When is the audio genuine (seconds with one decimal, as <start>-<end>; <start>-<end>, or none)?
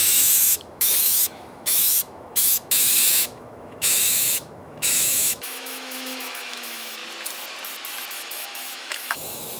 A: 7.0-8.1